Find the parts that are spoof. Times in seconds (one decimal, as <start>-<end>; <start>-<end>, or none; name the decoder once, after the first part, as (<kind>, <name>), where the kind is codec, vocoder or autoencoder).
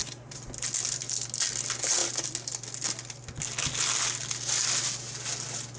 none